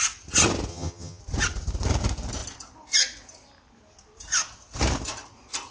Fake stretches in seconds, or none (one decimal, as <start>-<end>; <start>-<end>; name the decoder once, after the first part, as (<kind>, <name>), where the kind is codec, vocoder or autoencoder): 0.7-1.2 (vocoder, HiFi-GAN)